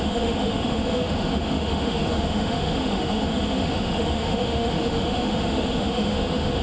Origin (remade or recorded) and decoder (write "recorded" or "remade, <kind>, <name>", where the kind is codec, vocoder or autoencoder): remade, autoencoder, DAC-VAE